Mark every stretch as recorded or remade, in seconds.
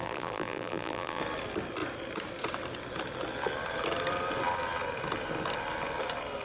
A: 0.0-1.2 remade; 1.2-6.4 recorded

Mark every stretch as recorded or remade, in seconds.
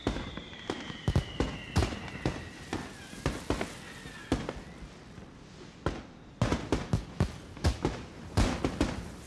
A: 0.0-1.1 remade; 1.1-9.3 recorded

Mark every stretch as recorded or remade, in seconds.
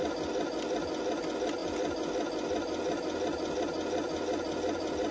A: 0.0-5.1 recorded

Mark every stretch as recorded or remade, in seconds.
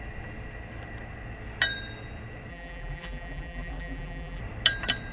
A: 0.0-2.5 recorded; 2.5-4.4 remade; 4.4-5.1 recorded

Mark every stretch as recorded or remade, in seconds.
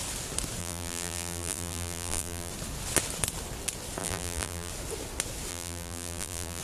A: 0.0-0.6 recorded; 0.6-2.5 remade; 2.5-4.0 recorded; 4.0-4.7 remade; 4.7-5.5 recorded; 5.5-6.6 remade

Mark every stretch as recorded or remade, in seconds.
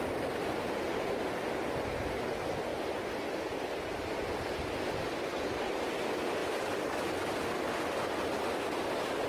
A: 0.0-9.3 recorded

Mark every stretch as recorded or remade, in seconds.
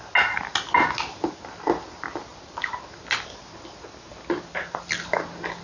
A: 0.0-5.6 recorded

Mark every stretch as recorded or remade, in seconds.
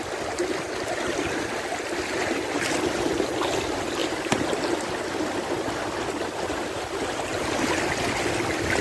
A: 0.0-4.0 recorded; 4.0-4.5 remade; 4.5-8.8 recorded